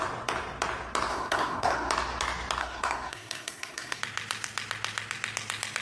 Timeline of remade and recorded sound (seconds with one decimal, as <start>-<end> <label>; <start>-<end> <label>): 0.0-1.1 recorded; 1.1-1.9 remade; 1.9-2.6 recorded; 2.6-4.0 remade; 4.0-5.8 recorded